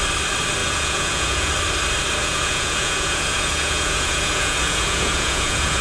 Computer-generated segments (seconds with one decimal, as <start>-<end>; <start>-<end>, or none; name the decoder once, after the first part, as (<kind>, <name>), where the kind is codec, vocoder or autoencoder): 0.6-1.5 (vocoder, Vocos); 2.2-5.8